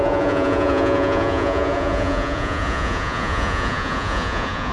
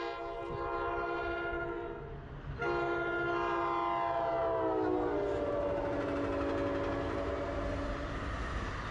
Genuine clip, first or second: second